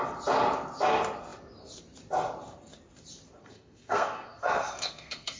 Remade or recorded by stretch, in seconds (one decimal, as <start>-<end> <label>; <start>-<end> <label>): 0.0-3.4 recorded; 3.4-5.4 remade